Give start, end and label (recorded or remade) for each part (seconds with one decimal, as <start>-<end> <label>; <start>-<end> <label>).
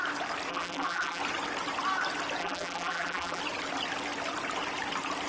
0.0-0.5 recorded; 0.5-1.2 remade; 1.2-2.4 recorded; 2.4-3.4 remade; 3.4-5.3 recorded